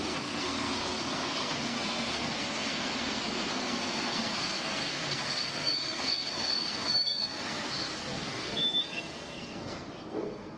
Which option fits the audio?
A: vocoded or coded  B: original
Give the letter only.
A